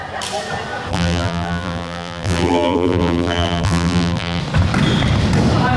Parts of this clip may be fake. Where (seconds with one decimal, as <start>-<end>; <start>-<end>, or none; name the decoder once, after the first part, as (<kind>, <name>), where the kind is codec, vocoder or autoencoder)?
0.9-4.4 (vocoder, BigVGAN v2)